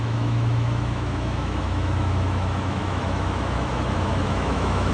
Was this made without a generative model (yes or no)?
no